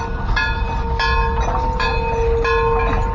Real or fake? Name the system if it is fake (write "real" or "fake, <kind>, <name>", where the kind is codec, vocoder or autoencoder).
real